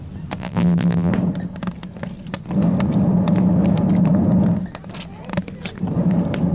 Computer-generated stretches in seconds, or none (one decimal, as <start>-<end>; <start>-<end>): 0.4-1.1